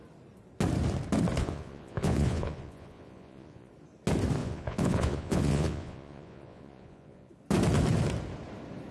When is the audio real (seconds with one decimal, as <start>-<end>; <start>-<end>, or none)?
0.0-1.4; 3.7-4.4; 7.3-8.9